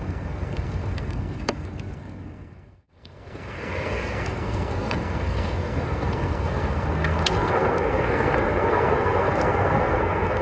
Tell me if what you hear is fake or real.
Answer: fake